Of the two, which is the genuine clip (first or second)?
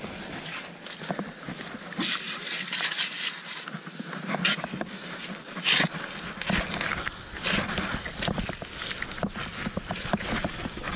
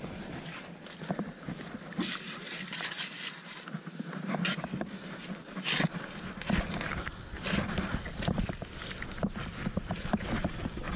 first